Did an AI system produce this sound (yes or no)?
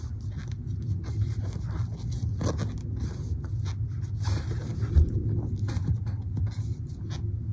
no